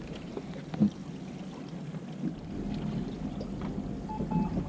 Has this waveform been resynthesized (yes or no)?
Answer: no